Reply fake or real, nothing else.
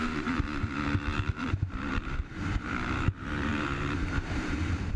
fake